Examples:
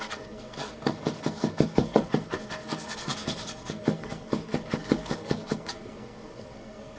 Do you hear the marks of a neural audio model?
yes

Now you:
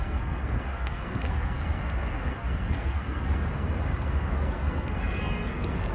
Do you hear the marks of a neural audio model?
yes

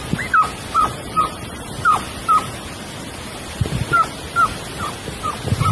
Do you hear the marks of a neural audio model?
no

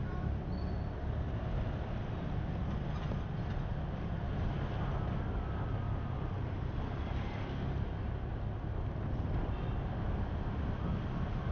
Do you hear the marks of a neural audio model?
no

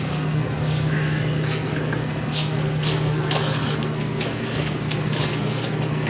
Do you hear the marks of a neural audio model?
yes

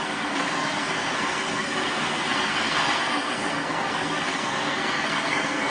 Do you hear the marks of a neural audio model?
yes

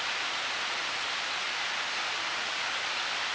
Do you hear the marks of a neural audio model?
no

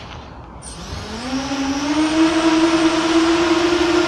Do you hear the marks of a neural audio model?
no